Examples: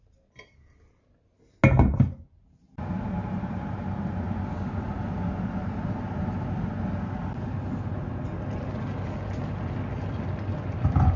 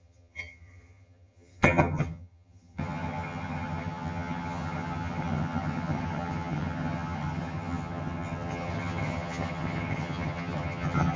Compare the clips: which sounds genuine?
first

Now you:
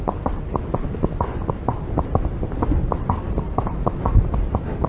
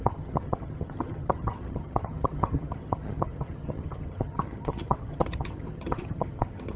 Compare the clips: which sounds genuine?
first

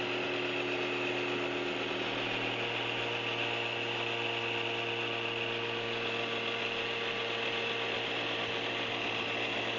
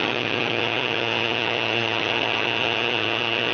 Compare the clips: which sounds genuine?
first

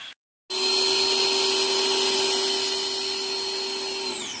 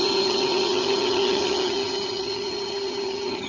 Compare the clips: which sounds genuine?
first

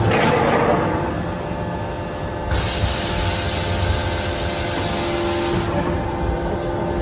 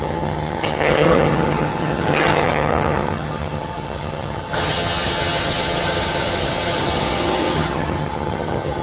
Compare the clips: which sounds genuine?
first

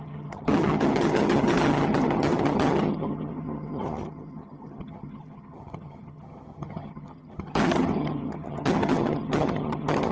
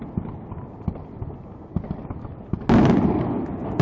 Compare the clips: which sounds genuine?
second